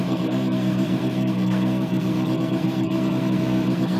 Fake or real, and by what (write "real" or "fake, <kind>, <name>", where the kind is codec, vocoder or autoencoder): fake, codec, SNAC